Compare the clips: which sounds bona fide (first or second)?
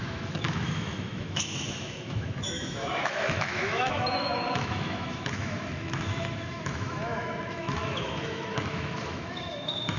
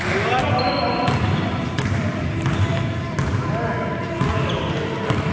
second